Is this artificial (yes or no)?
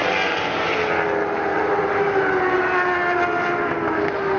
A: no